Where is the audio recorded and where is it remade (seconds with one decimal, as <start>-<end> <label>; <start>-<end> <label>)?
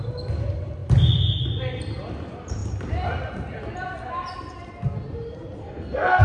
0.0-5.6 recorded; 5.6-6.2 remade